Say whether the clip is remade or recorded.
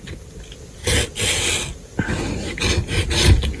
recorded